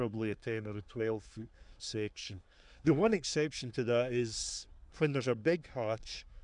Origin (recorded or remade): remade